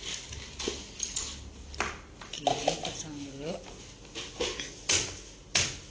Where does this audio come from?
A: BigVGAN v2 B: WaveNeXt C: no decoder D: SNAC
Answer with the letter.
C